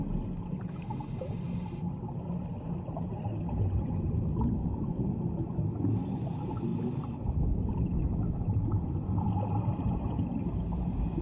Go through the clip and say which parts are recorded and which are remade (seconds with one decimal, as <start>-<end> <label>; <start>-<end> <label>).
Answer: 0.0-6.7 recorded; 6.7-8.1 remade; 8.1-11.2 recorded